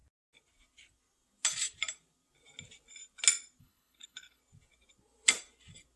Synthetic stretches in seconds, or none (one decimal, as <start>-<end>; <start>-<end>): 3.6-4.4